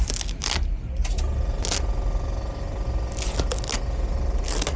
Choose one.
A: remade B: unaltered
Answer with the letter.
B